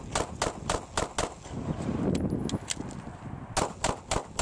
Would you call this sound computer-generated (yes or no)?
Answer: no